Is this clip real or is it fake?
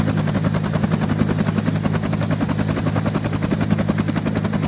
real